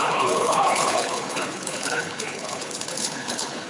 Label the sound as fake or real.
fake